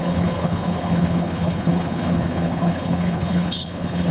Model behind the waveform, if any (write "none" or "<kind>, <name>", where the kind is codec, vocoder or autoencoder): codec, HILCodec